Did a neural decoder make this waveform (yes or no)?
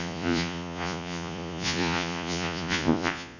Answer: yes